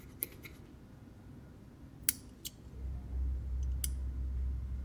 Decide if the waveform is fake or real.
real